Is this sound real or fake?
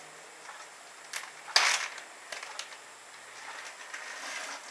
real